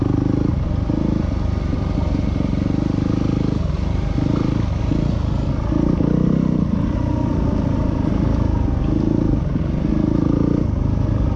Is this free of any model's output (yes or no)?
yes